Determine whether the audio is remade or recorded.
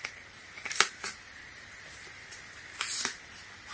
recorded